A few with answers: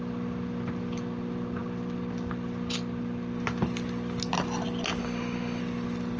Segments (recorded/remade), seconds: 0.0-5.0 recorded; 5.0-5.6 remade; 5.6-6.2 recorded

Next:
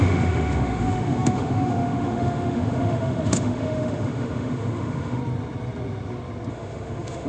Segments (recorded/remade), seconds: 0.0-5.2 remade; 5.2-6.5 recorded; 6.5-7.3 remade

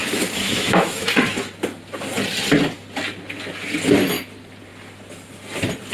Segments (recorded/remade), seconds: 0.0-1.2 remade; 1.2-5.9 recorded

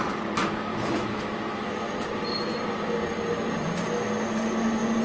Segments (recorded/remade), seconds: 0.0-0.7 recorded; 0.7-1.9 remade; 1.9-5.0 recorded